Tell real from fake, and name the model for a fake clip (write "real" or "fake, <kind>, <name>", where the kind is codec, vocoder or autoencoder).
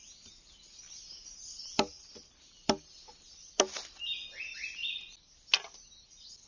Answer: real